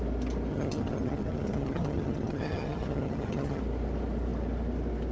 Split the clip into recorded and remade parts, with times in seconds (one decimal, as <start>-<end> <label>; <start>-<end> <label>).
0.0-0.5 recorded; 0.5-3.6 remade; 3.6-5.1 recorded